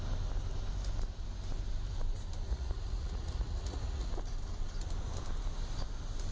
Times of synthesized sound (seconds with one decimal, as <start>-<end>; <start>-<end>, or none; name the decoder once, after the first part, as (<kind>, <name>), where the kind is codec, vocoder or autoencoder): 2.5-4.1 (vocoder, Vocos)